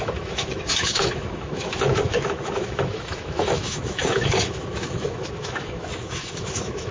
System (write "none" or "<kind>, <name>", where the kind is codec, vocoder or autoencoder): autoencoder, DAC-VAE